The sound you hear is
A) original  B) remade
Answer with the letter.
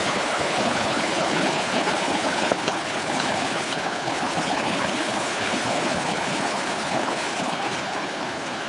B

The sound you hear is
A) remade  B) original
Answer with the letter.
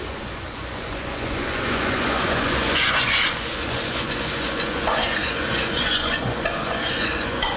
A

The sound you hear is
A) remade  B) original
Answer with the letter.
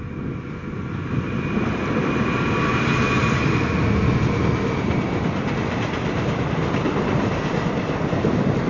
B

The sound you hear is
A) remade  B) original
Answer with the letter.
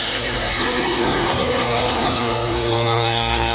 A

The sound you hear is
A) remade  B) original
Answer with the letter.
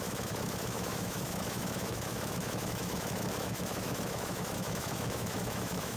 A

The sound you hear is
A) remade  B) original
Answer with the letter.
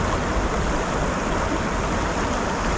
B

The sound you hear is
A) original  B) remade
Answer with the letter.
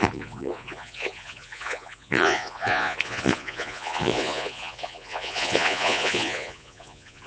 B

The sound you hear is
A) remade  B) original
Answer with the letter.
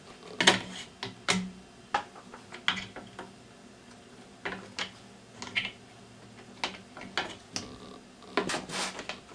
B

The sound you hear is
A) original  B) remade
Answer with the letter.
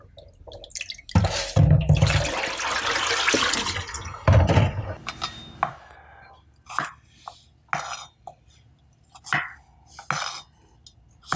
A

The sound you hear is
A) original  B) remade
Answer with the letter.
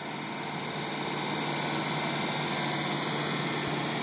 A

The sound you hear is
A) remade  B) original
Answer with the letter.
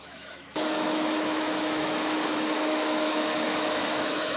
A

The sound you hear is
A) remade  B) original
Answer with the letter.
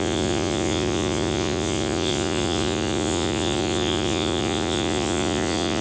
A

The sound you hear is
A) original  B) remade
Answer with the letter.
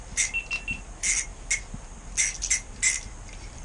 A